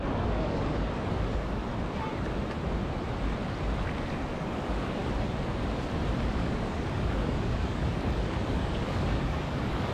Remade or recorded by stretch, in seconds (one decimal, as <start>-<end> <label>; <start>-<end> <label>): 0.0-1.6 remade; 1.6-4.3 recorded; 4.3-5.0 remade; 5.0-6.3 recorded; 6.3-9.9 remade